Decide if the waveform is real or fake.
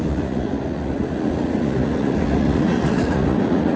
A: fake